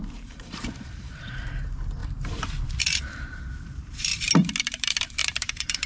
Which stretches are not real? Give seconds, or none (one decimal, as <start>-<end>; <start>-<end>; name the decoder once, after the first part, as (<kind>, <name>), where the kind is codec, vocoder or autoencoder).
0.0-2.0 (vocoder, BigVGAN v2); 2.6-4.1; 4.6-5.9